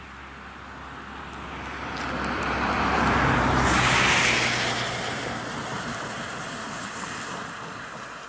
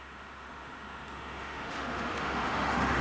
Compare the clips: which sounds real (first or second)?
first